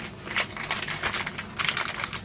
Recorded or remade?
recorded